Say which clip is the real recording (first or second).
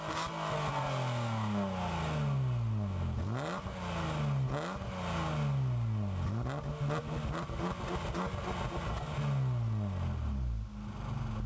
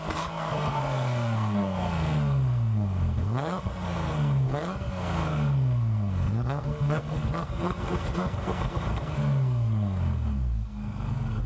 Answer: first